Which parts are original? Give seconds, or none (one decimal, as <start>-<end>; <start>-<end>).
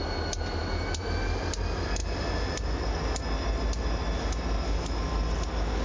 0.0-5.8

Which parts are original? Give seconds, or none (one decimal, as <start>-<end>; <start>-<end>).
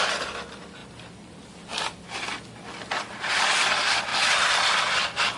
0.0-4.1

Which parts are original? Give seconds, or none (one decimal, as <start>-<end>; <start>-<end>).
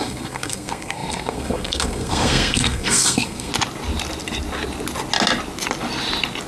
3.5-6.5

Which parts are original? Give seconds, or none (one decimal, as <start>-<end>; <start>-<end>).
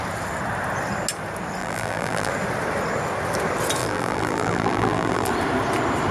0.0-1.6; 2.3-3.8; 5.3-6.1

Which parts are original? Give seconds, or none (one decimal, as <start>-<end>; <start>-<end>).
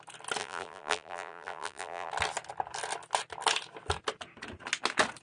0.0-0.4; 2.1-5.2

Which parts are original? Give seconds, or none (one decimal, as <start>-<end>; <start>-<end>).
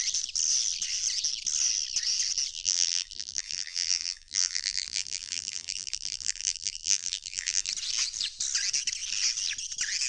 0.0-2.5; 7.7-10.1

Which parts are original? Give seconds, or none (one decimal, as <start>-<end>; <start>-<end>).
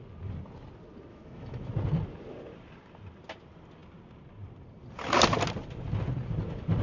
0.0-1.1; 1.7-6.8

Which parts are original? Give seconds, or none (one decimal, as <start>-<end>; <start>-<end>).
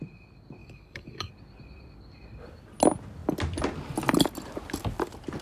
0.0-0.6; 1.3-5.4